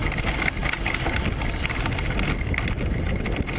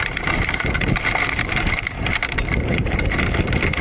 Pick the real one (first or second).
first